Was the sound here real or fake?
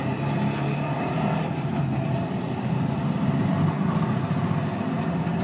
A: real